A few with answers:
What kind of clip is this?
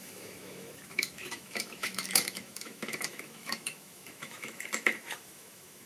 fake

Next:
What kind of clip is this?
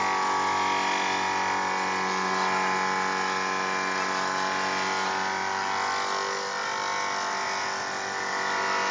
real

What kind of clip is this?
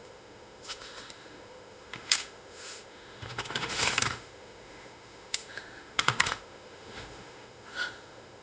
fake